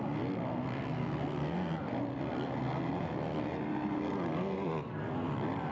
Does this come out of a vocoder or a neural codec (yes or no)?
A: no